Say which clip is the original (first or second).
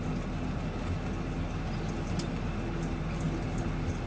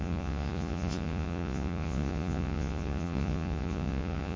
first